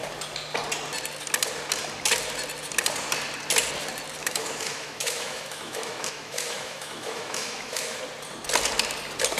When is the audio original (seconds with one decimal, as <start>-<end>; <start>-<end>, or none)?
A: 0.0-4.2; 8.0-9.4